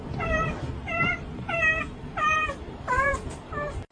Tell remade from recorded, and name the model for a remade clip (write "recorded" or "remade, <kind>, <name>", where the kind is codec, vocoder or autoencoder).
remade, vocoder, BigVGAN v2